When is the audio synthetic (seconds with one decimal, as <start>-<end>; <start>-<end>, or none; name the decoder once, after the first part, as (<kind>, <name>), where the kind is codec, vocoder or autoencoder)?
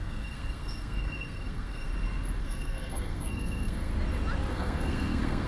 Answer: 0.0-1.9 (codec, SNAC); 2.4-3.9; 4.5-5.5